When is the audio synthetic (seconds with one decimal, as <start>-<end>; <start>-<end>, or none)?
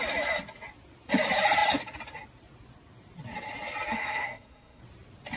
3.9-4.8